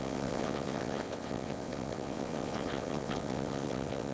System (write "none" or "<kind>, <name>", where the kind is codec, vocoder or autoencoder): vocoder, WaveNeXt